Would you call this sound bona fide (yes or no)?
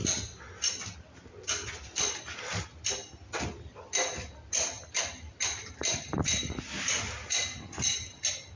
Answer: yes